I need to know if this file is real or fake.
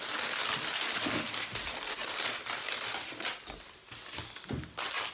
real